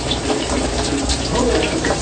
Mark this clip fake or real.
fake